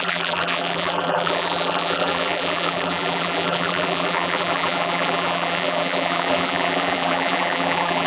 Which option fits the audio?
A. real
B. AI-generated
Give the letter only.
B